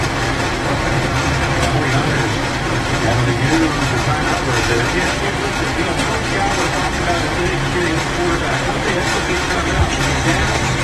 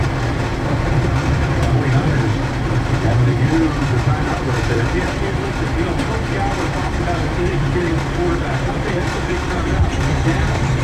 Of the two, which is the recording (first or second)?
first